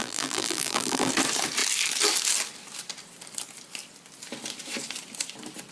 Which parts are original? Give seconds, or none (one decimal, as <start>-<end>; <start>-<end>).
1.1-5.7